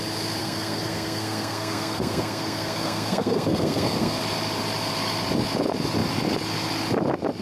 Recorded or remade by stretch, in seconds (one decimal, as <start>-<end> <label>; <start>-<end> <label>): 0.0-0.4 recorded; 0.4-4.2 remade; 4.2-7.4 recorded